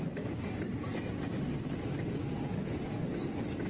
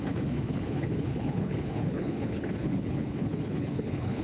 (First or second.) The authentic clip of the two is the first